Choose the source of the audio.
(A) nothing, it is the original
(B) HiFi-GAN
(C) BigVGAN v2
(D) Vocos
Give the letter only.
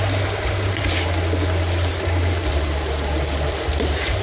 A